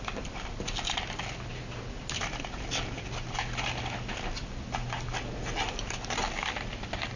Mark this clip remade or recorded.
recorded